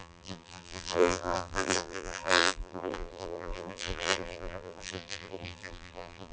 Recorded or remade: remade